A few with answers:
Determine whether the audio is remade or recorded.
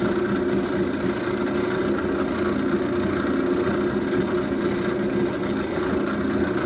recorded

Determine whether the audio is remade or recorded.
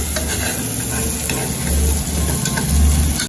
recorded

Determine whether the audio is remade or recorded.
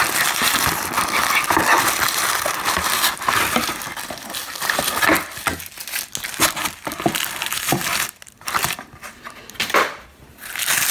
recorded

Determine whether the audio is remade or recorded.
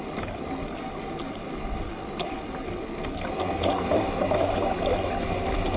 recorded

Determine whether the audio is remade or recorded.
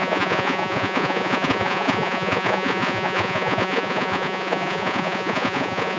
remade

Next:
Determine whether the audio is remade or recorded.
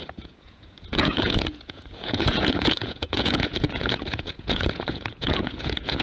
remade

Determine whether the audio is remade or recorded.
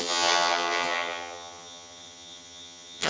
remade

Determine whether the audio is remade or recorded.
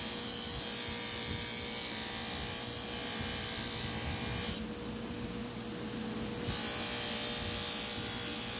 recorded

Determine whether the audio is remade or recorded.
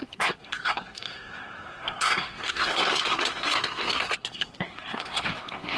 remade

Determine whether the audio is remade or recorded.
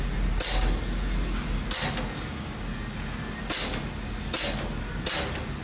recorded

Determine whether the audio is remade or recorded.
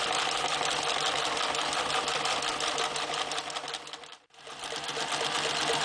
recorded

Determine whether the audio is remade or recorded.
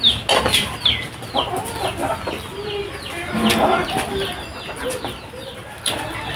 recorded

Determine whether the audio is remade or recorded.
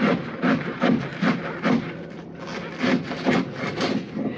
recorded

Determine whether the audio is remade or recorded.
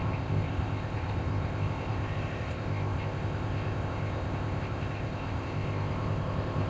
remade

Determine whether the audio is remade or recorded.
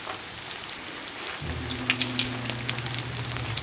recorded